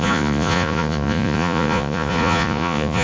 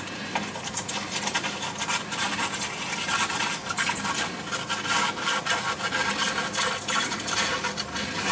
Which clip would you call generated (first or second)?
first